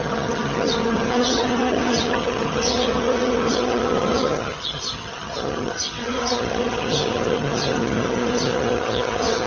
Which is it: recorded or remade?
remade